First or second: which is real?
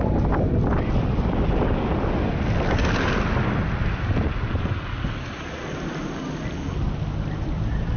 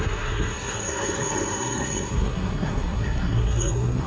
first